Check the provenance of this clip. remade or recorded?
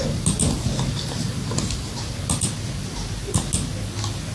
recorded